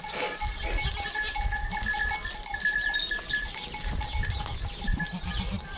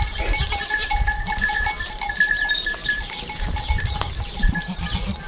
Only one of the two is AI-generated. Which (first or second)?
second